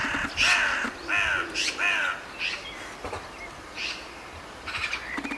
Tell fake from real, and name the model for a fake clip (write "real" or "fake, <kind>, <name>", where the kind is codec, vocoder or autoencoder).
real